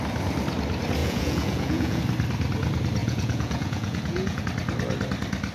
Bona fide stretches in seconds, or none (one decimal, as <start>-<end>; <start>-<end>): 0.0-1.0; 2.0-3.0; 4.4-5.5